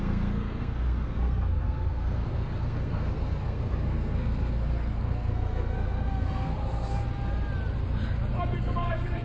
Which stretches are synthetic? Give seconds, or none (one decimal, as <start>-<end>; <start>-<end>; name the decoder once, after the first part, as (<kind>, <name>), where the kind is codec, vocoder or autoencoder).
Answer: 0.0-7.0 (codec, SNAC); 8.6-9.2